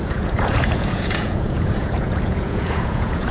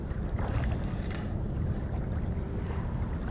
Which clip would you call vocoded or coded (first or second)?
first